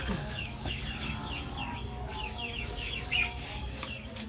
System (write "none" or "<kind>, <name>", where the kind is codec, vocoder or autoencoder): codec, DAC